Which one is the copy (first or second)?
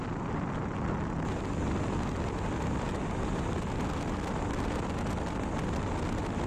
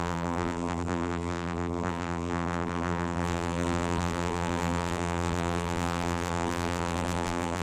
second